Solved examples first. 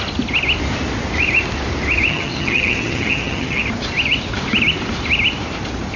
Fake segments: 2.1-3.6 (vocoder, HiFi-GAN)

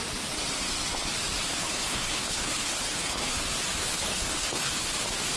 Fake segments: 1.5-3.3 (codec, HILCodec); 3.8-4.8

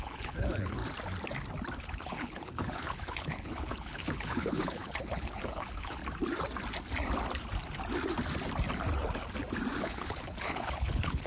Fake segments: 0.0-0.8 (codec, HILCodec); 1.8-6.0; 9.8-11.3

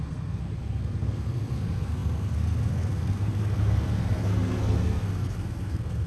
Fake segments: 0.0-6.1 (codec, SNAC)

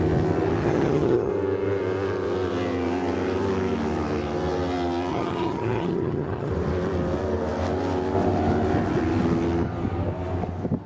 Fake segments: 0.6-1.3 (vocoder, HiFi-GAN); 5.1-6.5

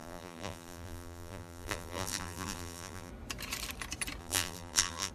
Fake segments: 0.0-3.1 (vocoder, BigVGAN v2); 4.2-5.1